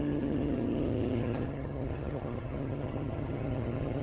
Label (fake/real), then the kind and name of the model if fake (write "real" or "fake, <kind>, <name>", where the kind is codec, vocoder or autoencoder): fake, vocoder, HiFi-GAN